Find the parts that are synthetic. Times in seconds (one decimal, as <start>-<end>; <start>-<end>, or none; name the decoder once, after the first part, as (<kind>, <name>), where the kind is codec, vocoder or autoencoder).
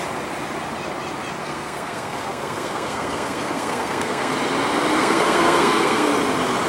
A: 1.4-4.3 (codec, SNAC); 5.0-6.1